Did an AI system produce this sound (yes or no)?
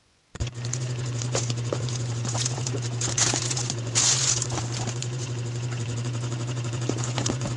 yes